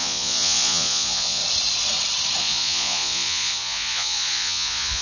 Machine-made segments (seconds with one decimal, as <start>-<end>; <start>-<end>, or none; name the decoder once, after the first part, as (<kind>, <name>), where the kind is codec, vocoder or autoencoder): 0.0-1.4 (vocoder, Vocos); 2.4-5.0